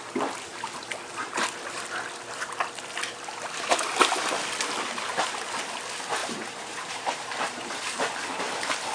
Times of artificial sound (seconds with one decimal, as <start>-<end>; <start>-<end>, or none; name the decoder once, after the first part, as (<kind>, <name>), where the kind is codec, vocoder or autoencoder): 6.2-7.8 (vocoder, BigVGAN v2)